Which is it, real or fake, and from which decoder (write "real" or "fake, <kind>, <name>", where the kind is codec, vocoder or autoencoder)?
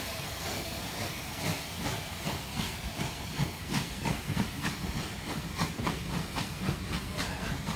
fake, codec, SNAC